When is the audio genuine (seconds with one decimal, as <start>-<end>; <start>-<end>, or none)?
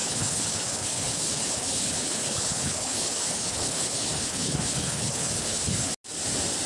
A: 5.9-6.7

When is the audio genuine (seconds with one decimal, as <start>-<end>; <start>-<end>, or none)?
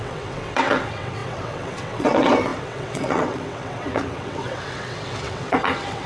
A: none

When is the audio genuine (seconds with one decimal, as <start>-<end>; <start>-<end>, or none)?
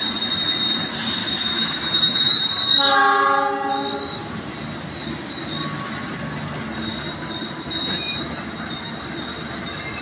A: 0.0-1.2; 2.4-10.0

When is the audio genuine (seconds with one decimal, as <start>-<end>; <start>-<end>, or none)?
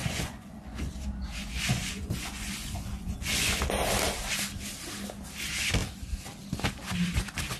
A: 0.9-1.4; 3.6-7.6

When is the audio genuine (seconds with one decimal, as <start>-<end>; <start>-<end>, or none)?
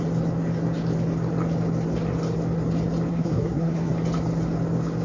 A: 0.0-3.1; 3.9-5.0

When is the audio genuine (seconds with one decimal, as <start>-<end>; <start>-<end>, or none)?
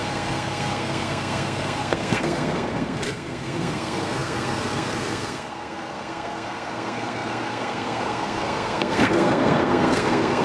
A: none